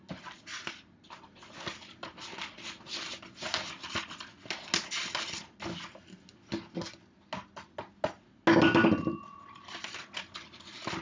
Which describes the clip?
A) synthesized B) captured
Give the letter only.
B